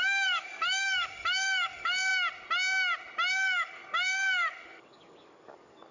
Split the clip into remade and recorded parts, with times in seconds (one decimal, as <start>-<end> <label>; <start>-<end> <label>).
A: 0.0-2.1 remade; 2.1-3.3 recorded; 3.3-5.9 remade